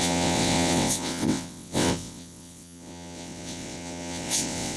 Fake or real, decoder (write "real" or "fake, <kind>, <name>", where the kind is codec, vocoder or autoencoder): fake, vocoder, WaveNeXt